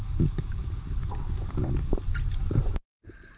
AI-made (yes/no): yes